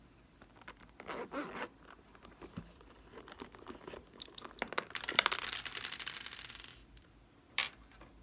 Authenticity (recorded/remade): remade